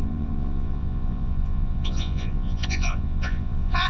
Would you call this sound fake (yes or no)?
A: yes